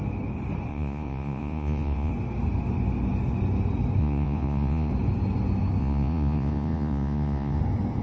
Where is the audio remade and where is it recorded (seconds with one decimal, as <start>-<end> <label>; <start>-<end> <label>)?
0.0-0.7 recorded; 0.7-2.1 remade; 2.1-4.0 recorded; 4.0-4.9 remade; 4.9-5.8 recorded; 5.8-7.6 remade; 7.6-8.0 recorded